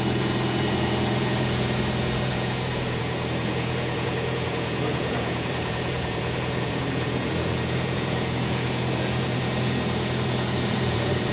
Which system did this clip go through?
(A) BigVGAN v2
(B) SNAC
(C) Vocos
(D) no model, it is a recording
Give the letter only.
C